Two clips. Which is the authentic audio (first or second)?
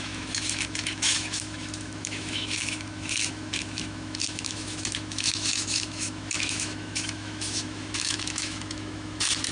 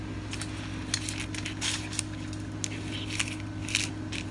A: second